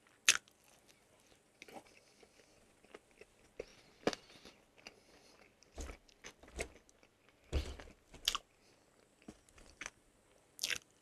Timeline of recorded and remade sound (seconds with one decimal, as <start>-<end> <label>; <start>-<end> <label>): 0.0-11.0 recorded